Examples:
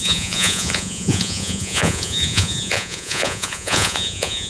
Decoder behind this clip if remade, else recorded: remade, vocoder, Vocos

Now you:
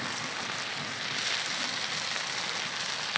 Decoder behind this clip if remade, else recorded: recorded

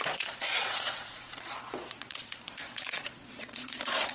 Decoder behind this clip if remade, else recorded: remade, vocoder, Vocos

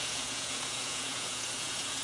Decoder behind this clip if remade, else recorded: remade, vocoder, Vocos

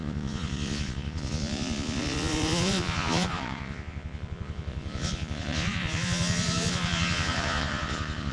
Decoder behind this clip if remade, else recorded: remade, vocoder, Vocos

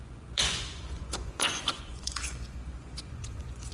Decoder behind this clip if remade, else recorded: remade, vocoder, Vocos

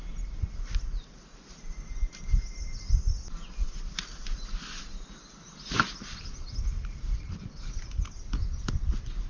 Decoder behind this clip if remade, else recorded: recorded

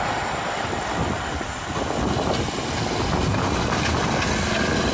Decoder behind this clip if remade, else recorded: recorded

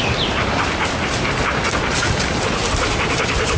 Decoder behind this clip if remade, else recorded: recorded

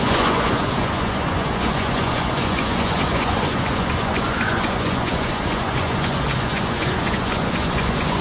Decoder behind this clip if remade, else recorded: remade, vocoder, Vocos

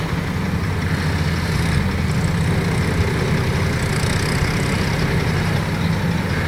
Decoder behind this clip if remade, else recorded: recorded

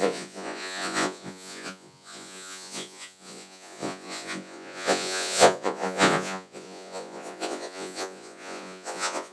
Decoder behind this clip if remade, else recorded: remade, vocoder, Vocos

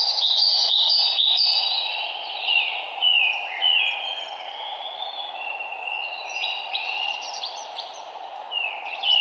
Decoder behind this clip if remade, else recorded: remade, vocoder, Vocos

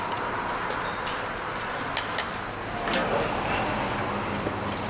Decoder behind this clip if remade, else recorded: recorded